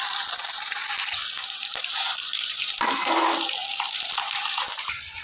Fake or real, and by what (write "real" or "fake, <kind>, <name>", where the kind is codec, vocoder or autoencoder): fake, vocoder, BigVGAN v2